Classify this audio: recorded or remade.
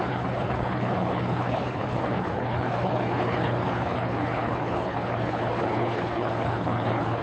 remade